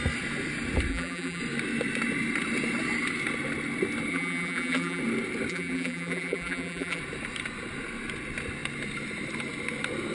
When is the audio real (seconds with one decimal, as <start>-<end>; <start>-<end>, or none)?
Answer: 0.0-0.9; 1.4-4.1; 5.0-5.5; 7.0-10.1